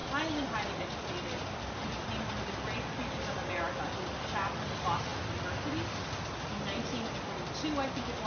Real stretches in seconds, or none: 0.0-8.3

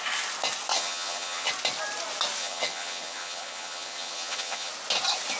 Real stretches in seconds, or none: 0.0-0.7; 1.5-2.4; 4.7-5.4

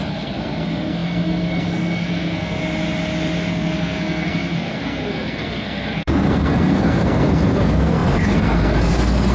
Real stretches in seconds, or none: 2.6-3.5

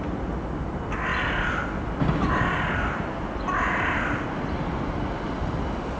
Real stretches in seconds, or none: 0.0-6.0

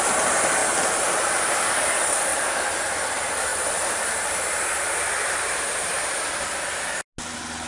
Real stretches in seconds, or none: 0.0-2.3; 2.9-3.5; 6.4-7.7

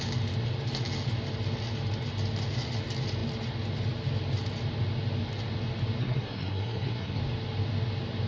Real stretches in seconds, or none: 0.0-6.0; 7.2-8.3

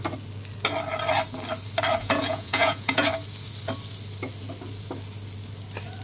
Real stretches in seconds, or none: 0.0-2.0; 3.1-6.0